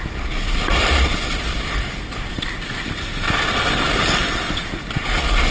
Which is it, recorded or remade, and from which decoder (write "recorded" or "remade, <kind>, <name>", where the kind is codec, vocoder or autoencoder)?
recorded